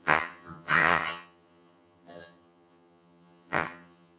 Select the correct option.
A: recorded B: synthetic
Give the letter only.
B